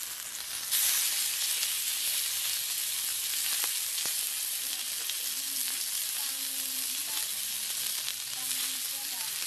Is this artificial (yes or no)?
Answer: no